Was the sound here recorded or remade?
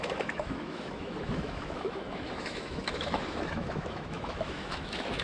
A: remade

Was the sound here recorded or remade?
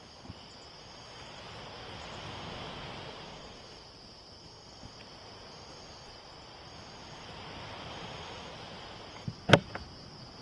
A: recorded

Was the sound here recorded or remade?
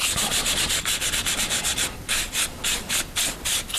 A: recorded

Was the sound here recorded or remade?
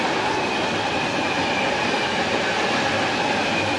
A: recorded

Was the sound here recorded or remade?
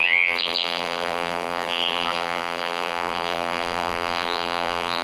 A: remade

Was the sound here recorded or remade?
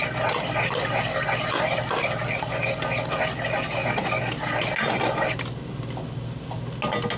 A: recorded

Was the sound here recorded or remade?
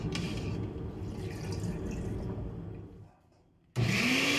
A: recorded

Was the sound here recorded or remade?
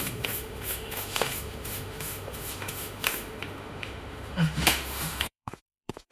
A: remade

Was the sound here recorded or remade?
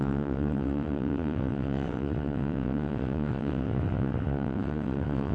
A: remade